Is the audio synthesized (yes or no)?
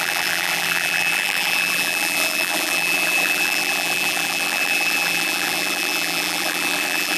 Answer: yes